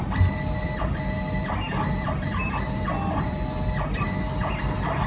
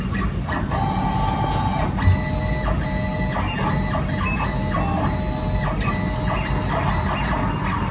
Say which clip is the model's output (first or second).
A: first